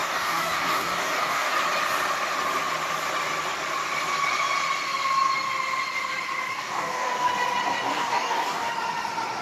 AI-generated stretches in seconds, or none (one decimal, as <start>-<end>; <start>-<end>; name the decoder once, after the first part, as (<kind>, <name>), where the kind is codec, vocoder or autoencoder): 0.0-1.5 (codec, DAC); 6.5-7.3; 7.9-8.7